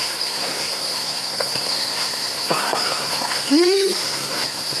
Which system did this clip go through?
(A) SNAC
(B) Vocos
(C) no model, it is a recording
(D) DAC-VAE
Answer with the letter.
A